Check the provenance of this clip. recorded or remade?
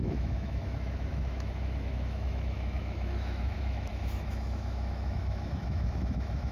remade